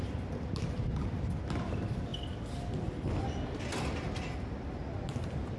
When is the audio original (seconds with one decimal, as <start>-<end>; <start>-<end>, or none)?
0.0-5.6